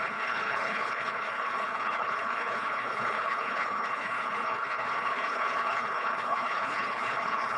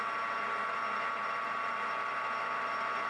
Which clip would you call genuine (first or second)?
second